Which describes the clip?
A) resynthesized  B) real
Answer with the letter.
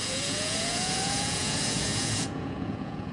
A